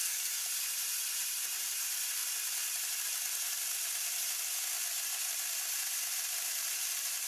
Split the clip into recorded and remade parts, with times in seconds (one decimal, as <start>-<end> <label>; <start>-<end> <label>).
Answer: 0.0-0.5 remade; 0.5-7.3 recorded